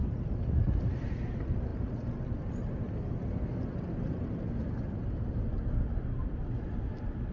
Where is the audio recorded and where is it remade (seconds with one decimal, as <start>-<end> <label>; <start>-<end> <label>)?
0.0-7.3 recorded